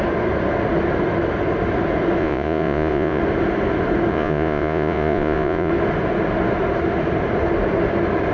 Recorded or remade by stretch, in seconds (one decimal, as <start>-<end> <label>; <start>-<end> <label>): 0.0-2.2 recorded; 2.2-3.2 remade; 3.2-4.1 recorded; 4.1-5.7 remade; 5.7-8.3 recorded

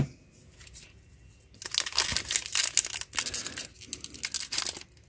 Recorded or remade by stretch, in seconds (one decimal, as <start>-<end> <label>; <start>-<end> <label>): 0.0-5.1 recorded

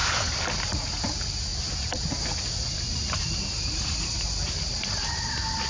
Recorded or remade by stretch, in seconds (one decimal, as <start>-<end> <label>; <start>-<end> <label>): 0.0-1.1 remade; 1.1-2.9 recorded; 2.9-4.2 remade; 4.2-5.7 recorded